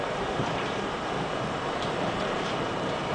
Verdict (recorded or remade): remade